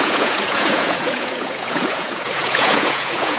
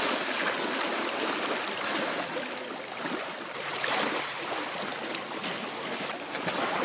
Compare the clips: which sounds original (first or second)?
second